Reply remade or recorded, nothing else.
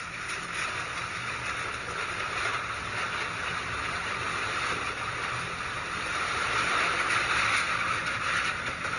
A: recorded